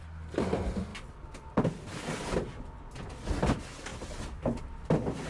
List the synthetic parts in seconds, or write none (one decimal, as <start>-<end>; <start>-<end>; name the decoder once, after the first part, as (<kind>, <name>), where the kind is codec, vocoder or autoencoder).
none